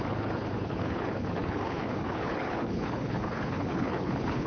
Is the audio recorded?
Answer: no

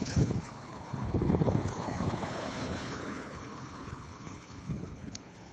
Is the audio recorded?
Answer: no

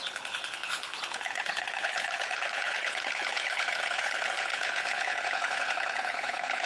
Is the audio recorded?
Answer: no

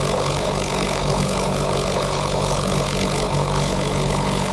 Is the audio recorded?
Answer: no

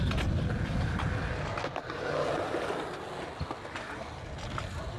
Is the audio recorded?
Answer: yes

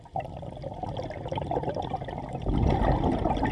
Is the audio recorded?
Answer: yes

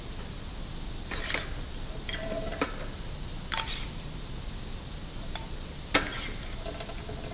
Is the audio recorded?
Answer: yes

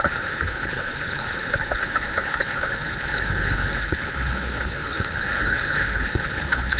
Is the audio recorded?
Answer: no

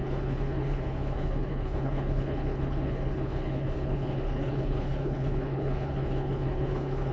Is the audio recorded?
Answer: no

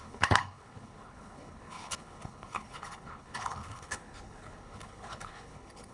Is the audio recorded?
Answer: no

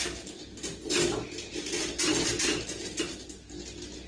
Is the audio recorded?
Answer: yes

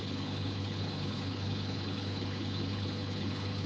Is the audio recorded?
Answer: no